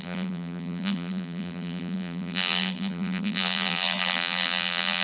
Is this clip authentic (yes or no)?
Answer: no